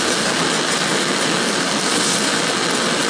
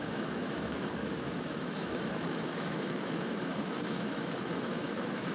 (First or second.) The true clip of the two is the first